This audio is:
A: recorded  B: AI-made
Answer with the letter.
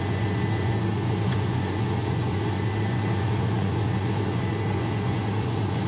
B